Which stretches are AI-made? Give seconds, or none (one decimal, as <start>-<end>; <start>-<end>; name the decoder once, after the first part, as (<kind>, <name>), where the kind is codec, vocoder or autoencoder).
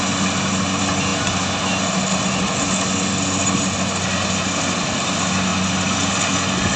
none